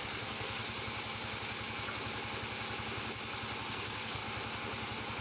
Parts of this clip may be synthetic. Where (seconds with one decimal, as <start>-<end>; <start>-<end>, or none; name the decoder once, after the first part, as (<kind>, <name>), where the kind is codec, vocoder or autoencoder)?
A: 0.0-0.6 (codec, SNAC); 3.7-4.2